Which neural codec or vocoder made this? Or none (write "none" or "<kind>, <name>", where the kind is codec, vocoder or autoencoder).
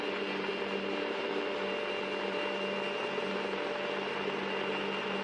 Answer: none